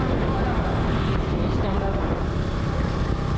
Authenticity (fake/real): real